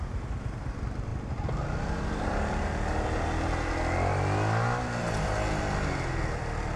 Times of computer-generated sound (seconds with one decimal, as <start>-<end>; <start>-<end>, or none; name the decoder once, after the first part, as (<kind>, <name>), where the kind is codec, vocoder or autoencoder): none